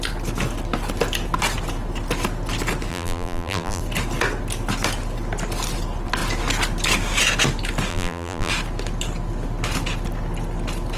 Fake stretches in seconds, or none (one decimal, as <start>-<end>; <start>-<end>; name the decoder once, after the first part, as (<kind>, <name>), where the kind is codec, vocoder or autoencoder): 2.9-3.8 (vocoder, BigVGAN v2); 7.9-8.5